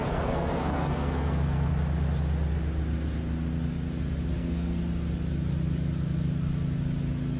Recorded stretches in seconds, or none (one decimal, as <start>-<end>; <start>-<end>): 1.7-4.3; 4.8-7.4